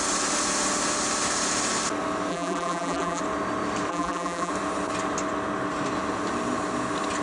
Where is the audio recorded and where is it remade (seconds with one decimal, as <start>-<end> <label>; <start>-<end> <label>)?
0.0-2.3 recorded; 2.3-3.2 remade; 3.2-3.9 recorded; 3.9-4.5 remade; 4.5-7.2 recorded

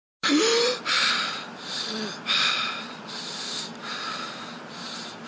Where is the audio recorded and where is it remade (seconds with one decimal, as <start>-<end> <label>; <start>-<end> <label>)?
0.0-5.3 recorded

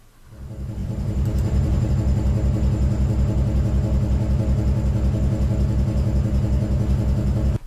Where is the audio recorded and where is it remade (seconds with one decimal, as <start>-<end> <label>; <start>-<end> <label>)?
0.0-0.8 recorded; 0.8-1.9 remade; 1.9-7.7 recorded

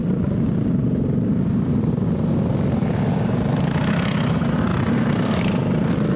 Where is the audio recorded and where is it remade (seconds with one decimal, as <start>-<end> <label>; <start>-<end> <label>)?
0.0-1.6 recorded; 1.6-6.2 remade

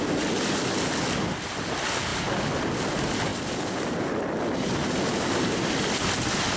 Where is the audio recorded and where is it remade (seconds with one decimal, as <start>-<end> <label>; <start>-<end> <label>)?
0.0-3.3 recorded; 3.3-4.0 remade; 4.0-6.6 recorded

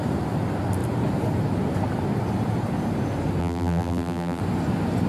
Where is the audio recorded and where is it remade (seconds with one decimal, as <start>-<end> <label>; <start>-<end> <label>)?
0.0-3.4 recorded; 3.4-4.4 remade; 4.4-5.1 recorded

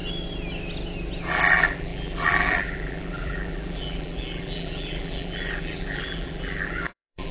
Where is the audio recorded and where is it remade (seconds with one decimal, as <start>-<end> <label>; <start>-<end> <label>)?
0.0-1.3 recorded; 1.3-7.3 remade